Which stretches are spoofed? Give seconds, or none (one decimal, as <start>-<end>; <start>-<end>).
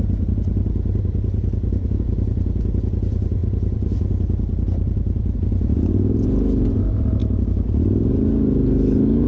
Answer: 3.4-5.4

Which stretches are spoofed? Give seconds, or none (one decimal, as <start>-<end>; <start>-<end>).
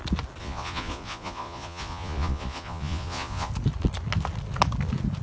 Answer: 0.4-3.5